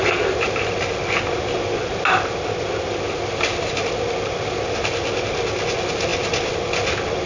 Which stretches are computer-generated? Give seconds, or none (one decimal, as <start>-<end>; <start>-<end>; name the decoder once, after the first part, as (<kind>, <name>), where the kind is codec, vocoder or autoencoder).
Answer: none